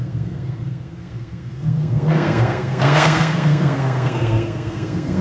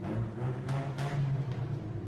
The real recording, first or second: second